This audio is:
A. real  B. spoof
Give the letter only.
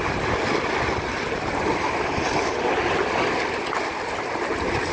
A